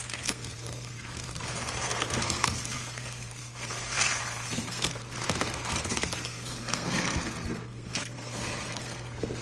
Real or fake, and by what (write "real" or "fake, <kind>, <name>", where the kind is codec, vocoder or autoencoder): fake, codec, SNAC